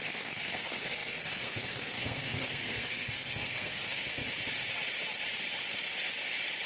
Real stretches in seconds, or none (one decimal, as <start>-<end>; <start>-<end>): 4.2-6.7